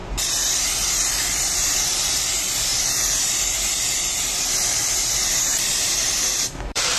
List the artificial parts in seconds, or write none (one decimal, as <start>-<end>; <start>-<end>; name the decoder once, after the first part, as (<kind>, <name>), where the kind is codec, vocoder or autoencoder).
0.0-7.0 (vocoder, BigVGAN v2)